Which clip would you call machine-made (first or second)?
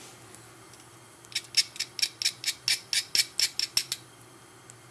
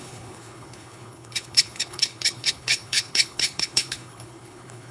second